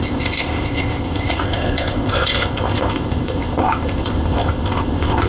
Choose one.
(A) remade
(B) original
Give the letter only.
A